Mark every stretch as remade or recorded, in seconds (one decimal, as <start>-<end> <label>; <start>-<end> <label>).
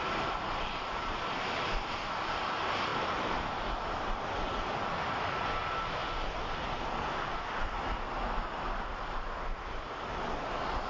0.0-10.9 recorded